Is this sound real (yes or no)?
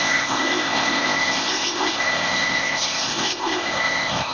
no